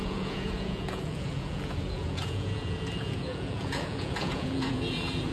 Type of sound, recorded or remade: remade